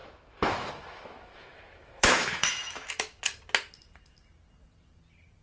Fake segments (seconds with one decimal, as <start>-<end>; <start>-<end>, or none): 0.0-3.2